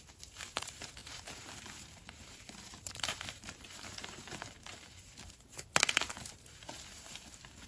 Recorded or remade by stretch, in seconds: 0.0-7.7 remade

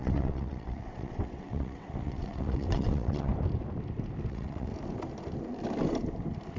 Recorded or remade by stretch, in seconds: 0.0-3.3 remade; 3.3-4.3 recorded; 4.3-4.7 remade; 4.7-6.6 recorded

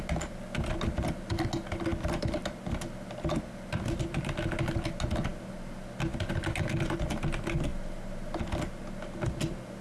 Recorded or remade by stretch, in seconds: 0.0-9.8 recorded

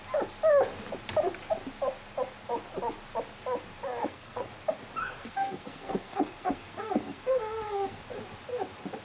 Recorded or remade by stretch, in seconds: 0.0-4.0 recorded; 4.0-4.5 remade; 4.5-5.0 recorded; 5.0-8.0 remade; 8.0-9.0 recorded

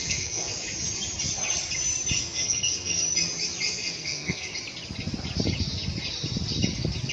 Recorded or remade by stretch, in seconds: 0.0-0.5 remade; 0.5-2.2 recorded; 2.2-2.9 remade; 2.9-3.7 recorded; 3.7-4.5 remade; 4.5-7.1 recorded